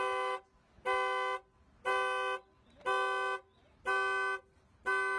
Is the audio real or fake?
real